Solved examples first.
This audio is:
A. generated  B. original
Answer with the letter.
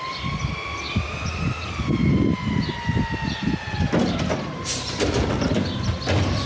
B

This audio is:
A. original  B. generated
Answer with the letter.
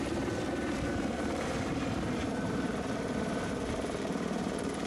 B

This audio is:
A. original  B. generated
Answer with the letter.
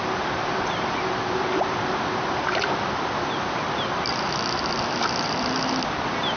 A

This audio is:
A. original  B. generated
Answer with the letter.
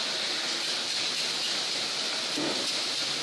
A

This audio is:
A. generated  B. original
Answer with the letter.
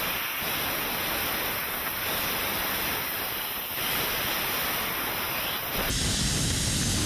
A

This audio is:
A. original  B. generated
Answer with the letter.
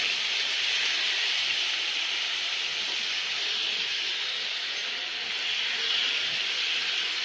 A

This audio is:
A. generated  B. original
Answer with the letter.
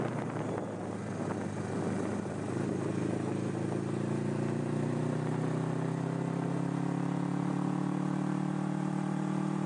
B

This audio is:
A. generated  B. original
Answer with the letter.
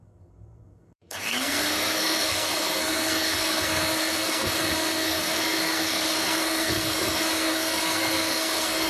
A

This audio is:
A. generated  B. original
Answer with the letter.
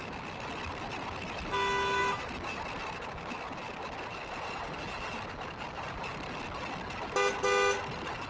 B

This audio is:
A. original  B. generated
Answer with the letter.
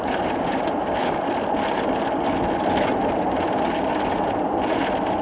A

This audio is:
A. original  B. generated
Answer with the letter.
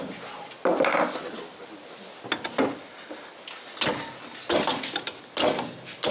A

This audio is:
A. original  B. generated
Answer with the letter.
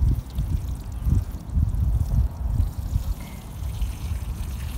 B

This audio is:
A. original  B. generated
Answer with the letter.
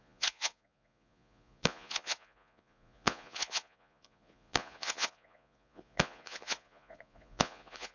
B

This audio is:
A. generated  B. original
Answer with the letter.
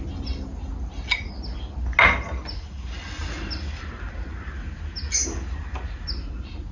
B